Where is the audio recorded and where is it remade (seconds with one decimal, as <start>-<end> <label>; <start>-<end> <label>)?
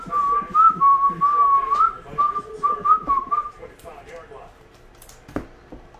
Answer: 0.0-2.8 recorded; 2.8-4.9 remade; 4.9-6.0 recorded